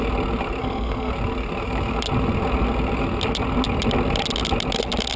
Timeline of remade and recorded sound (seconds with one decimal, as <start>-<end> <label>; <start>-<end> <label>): 0.0-0.6 recorded; 0.6-1.1 remade; 1.1-5.2 recorded